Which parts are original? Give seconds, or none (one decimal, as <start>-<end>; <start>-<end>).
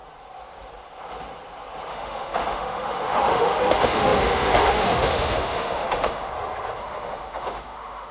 0.0-1.9; 6.3-6.8